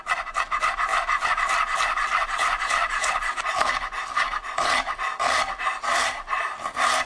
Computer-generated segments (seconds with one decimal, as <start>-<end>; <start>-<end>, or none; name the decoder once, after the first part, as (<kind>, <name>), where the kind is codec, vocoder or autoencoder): none